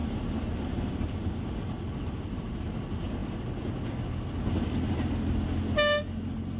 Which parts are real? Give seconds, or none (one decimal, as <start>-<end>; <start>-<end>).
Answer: 0.0-6.6